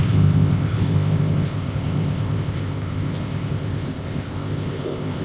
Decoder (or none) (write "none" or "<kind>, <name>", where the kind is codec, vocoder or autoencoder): codec, ZipCodec